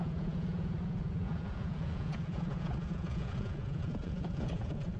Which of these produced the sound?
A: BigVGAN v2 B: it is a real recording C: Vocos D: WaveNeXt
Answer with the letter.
C